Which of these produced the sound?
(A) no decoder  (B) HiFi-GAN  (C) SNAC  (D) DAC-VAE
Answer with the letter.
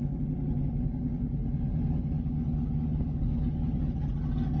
A